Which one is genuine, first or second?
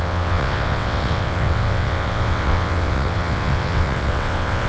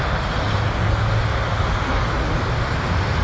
second